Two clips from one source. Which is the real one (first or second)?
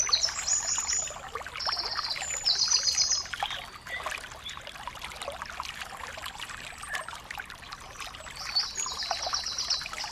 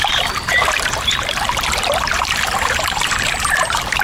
first